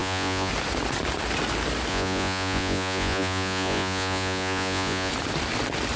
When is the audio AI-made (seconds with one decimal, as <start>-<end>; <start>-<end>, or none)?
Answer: 0.0-0.5; 1.9-5.1